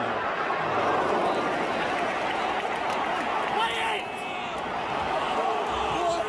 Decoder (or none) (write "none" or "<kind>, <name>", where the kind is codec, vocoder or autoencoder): none